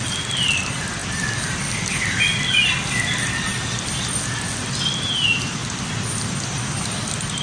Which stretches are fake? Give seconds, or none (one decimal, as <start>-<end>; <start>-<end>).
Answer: none